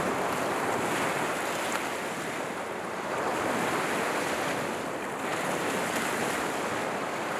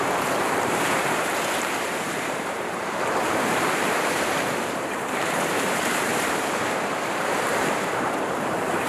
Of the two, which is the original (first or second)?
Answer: first